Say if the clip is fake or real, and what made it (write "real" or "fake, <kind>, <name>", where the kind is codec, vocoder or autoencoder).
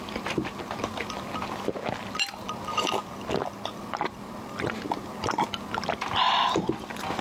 real